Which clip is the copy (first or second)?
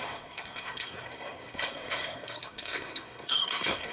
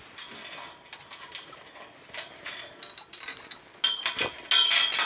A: first